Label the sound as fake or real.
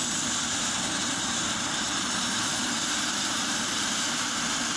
fake